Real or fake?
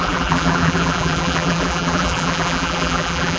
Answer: fake